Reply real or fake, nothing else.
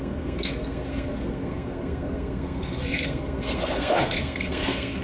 fake